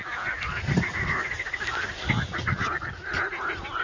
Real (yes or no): yes